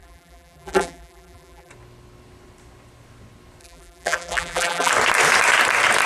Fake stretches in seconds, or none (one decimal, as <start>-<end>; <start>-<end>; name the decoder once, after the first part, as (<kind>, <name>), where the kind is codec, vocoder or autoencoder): 0.0-1.7 (vocoder, BigVGAN v2); 3.6-4.9